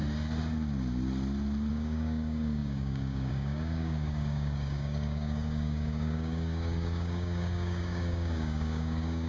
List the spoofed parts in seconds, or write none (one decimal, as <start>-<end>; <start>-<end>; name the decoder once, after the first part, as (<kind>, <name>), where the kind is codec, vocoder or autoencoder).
1.7-9.3 (codec, DAC)